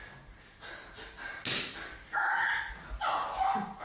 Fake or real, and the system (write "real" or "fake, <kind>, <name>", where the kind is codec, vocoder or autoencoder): real